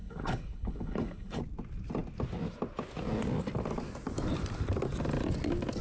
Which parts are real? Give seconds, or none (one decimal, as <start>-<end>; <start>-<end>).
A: 1.4-5.8